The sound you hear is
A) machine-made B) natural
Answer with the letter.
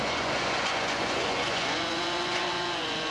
A